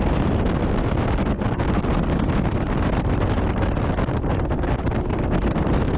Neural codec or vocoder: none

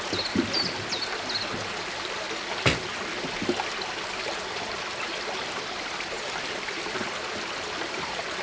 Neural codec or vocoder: none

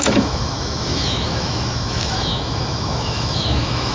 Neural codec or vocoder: autoencoder, DAC-VAE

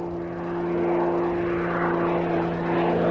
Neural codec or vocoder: none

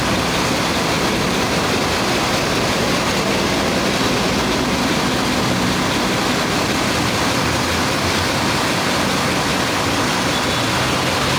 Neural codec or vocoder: none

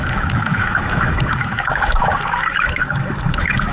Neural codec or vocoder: autoencoder, DAC-VAE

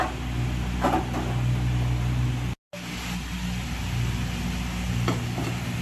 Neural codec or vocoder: none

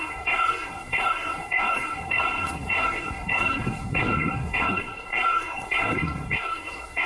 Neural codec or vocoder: codec, SNAC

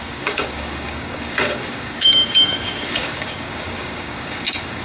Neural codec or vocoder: codec, DAC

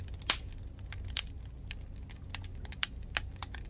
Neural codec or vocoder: none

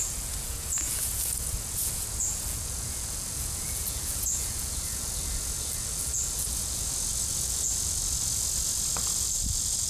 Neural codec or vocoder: vocoder, Vocos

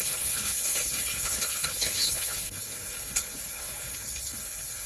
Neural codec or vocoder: codec, HILCodec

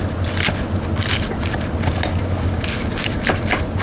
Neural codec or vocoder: none